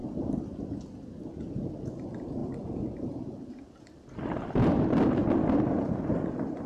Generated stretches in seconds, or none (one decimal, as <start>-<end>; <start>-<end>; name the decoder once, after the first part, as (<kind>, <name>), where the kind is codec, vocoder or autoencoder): 2.4-6.7 (vocoder, BigVGAN v2)